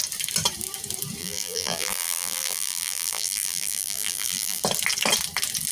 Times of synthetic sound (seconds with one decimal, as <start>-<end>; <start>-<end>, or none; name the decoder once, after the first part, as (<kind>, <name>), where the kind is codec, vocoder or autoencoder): 1.2-4.6 (vocoder, BigVGAN v2)